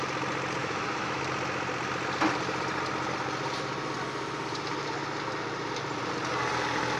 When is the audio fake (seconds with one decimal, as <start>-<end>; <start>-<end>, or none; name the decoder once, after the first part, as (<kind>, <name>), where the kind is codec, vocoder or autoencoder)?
0.6-1.2 (autoencoder, DAC-VAE)